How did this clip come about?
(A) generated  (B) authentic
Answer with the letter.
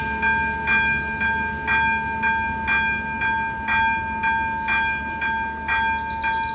B